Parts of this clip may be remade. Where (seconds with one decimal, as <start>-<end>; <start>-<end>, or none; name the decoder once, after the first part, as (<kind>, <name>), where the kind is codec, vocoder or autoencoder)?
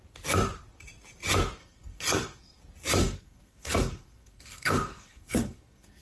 1.6-2.6 (codec, SNAC); 3.0-6.0